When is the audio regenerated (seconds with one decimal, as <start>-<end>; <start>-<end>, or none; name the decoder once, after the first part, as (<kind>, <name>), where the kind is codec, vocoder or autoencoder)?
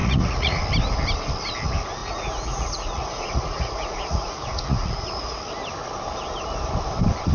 0.0-0.6 (vocoder, Vocos); 2.0-5.4